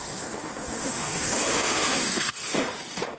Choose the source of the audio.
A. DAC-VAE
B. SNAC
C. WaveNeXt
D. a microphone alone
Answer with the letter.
A